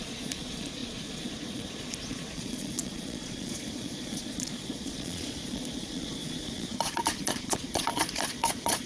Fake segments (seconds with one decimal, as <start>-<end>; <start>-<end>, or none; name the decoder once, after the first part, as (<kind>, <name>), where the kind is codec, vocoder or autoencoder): 0.0-8.9 (vocoder, Vocos)